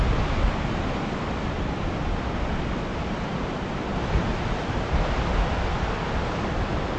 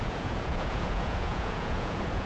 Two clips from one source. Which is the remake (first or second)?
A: second